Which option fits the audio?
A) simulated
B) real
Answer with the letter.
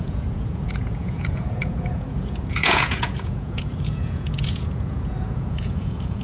A